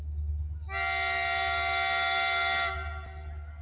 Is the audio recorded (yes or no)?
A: yes